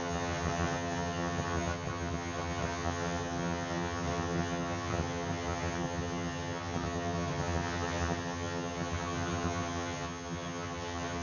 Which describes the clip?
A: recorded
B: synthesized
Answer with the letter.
B